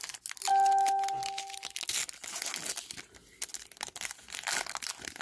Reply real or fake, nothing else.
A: real